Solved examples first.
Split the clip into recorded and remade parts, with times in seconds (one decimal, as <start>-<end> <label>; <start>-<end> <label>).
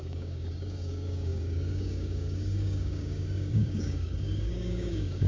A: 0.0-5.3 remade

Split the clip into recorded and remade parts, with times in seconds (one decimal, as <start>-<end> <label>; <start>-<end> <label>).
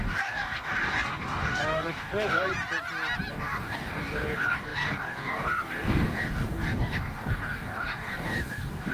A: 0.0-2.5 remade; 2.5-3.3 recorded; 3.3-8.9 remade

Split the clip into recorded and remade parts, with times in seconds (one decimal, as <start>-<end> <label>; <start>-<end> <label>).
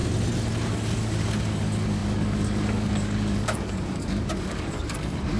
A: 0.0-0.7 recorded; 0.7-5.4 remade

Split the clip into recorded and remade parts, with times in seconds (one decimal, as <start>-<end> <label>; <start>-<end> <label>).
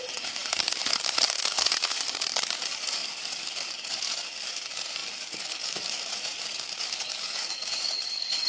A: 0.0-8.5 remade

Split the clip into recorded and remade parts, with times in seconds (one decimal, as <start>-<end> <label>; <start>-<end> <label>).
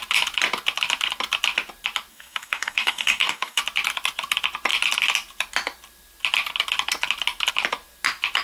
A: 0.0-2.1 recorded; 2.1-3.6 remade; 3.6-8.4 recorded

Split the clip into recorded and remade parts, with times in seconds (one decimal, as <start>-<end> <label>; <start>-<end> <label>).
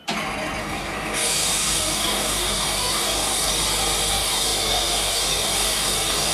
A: 0.0-0.6 recorded; 0.6-3.5 remade; 3.5-4.1 recorded; 4.1-6.3 remade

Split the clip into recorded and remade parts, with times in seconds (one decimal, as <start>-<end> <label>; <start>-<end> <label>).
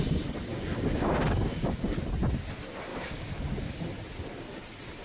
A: 0.0-0.5 recorded; 0.5-1.8 remade; 1.8-2.9 recorded; 2.9-3.4 remade; 3.4-5.0 recorded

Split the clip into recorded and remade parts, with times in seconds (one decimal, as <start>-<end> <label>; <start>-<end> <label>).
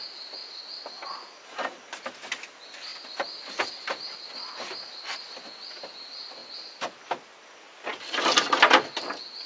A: 0.0-9.5 recorded